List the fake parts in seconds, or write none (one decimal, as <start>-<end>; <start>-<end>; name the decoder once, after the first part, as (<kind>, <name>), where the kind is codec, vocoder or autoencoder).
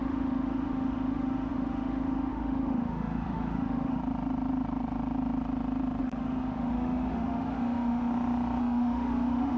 0.0-4.0 (autoencoder, DAC-VAE); 6.0-8.1; 8.6-9.6